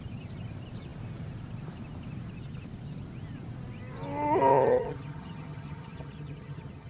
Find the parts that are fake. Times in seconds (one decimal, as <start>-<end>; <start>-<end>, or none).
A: 4.5-6.9